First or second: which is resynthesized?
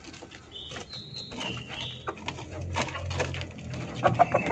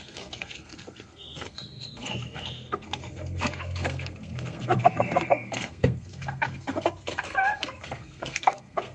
second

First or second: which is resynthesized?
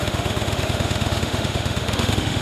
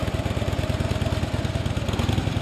first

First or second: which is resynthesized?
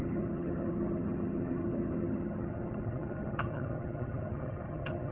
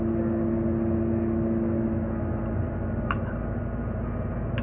first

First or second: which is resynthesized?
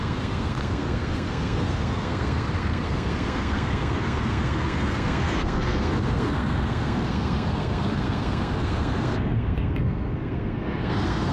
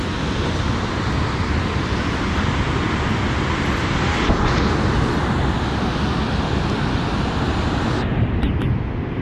first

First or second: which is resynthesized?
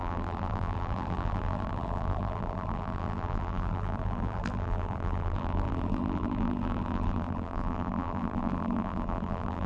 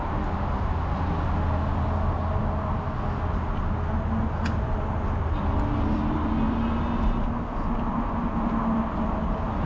first